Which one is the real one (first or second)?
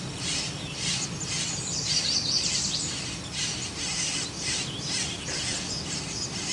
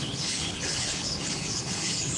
first